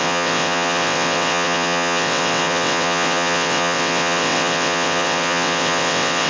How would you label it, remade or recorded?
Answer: remade